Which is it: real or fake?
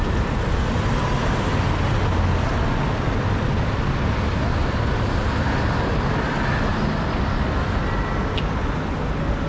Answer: real